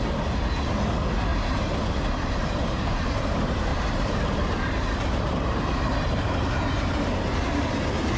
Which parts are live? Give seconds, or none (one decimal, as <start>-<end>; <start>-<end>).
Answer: 0.0-1.3; 3.0-3.7; 6.9-8.2